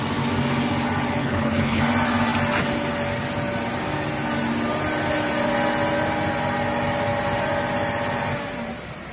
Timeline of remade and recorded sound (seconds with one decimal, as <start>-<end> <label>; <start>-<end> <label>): 0.0-1.2 recorded; 1.2-1.8 remade; 1.8-9.1 recorded